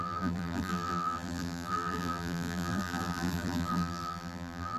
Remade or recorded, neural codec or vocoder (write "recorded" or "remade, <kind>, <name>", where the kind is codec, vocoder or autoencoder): remade, vocoder, BigVGAN v2